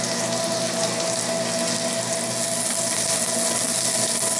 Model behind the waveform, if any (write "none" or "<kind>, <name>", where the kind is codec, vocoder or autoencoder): none